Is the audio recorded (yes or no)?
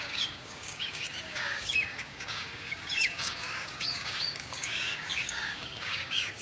no